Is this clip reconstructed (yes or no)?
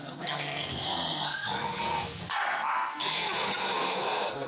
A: yes